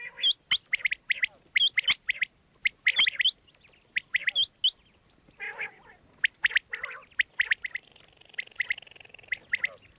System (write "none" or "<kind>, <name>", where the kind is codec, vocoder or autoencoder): none